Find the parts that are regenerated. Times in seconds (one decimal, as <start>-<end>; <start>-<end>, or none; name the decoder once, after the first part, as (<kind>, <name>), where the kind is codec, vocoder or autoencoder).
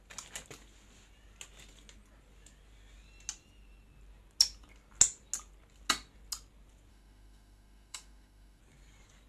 6.9-8.6 (autoencoder, DAC-VAE)